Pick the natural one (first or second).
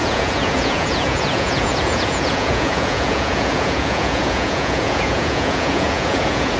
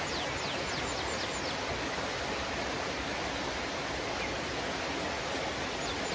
second